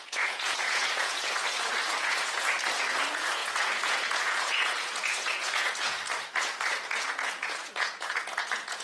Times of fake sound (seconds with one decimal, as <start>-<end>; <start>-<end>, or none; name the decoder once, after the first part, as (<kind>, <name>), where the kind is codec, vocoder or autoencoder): 0.0-8.8 (vocoder, Vocos)